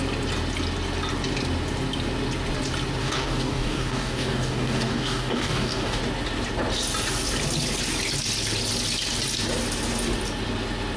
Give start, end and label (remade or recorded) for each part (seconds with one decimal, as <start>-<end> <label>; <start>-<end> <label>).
0.0-3.0 recorded; 3.0-6.0 remade; 6.0-11.0 recorded

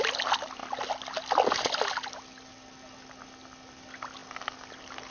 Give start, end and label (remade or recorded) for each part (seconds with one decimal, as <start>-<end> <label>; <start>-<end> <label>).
0.0-5.1 recorded

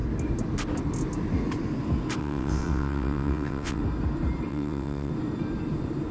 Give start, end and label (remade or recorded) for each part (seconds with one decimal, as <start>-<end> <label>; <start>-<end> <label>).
0.0-2.2 recorded; 2.2-3.8 remade; 3.8-4.5 recorded; 4.5-5.1 remade; 5.1-6.1 recorded

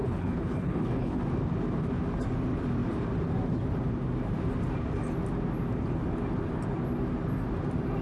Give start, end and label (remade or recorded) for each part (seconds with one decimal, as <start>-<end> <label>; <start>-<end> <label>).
0.0-1.2 remade; 1.2-8.0 recorded